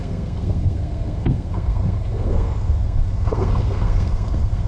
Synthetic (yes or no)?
yes